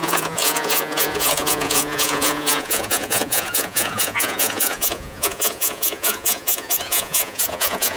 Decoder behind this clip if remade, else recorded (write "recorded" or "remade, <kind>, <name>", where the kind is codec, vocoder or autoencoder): remade, vocoder, Vocos